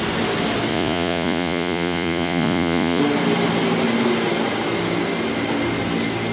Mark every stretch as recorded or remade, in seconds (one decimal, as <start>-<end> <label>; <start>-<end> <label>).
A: 0.0-0.7 recorded; 0.7-3.0 remade; 3.0-6.3 recorded